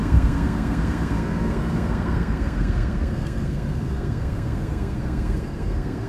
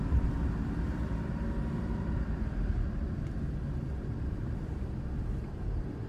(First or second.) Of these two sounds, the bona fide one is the second